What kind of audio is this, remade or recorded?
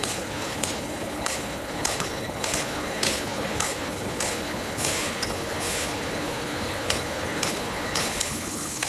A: remade